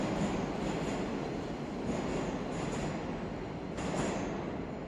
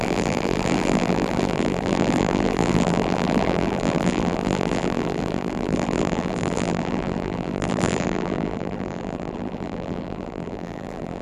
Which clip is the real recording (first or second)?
first